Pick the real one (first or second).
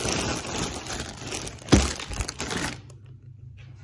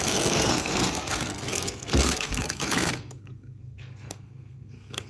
first